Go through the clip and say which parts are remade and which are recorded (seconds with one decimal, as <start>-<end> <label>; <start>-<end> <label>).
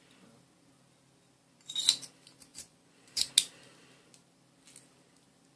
0.0-2.5 recorded; 2.5-3.3 remade; 3.3-5.6 recorded